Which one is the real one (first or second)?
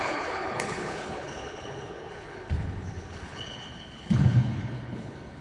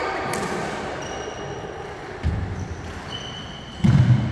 second